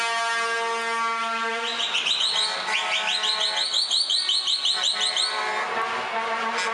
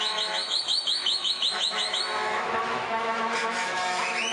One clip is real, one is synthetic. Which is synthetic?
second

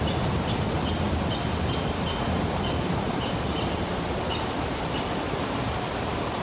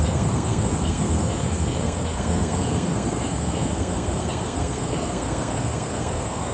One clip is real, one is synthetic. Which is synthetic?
second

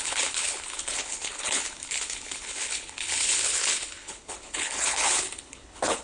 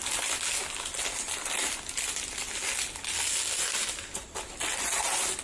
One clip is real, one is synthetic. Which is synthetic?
first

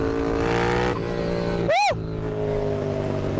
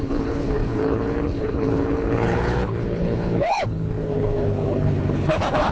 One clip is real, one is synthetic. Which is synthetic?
second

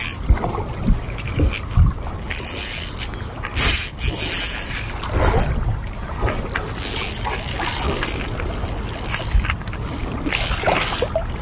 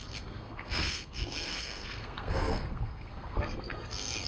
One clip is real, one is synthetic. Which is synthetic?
second